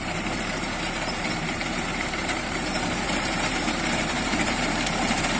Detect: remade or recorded remade